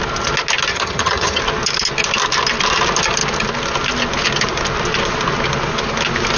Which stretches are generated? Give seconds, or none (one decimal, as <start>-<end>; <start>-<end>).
0.7-1.4